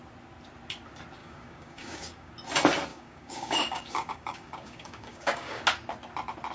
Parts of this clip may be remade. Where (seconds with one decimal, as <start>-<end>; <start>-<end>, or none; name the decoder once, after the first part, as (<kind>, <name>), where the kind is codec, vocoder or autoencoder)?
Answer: 1.2-2.3 (codec, DAC); 2.9-5.6